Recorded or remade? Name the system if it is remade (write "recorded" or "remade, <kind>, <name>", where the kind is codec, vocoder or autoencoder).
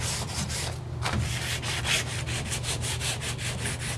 recorded